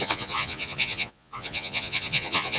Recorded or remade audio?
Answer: remade